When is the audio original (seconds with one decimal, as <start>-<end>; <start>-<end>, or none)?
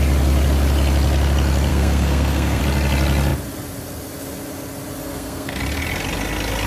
0.0-1.7; 2.6-5.0; 5.6-6.7